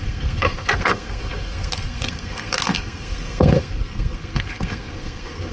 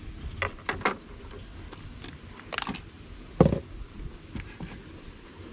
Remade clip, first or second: first